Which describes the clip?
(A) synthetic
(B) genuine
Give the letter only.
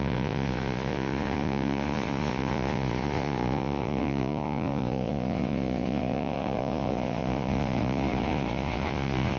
A